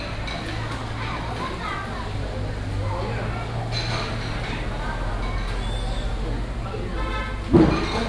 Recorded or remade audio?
recorded